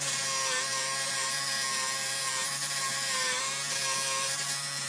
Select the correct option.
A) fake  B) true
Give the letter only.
A